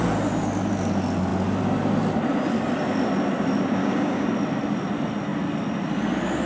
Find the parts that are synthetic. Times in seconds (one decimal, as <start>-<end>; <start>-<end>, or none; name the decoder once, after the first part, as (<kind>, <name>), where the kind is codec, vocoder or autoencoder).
3.8-4.3 (codec, DAC)